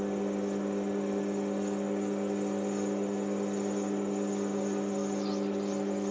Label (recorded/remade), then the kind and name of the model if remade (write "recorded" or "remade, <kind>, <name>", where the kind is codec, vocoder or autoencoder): recorded